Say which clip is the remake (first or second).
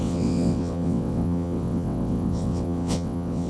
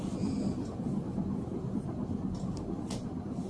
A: first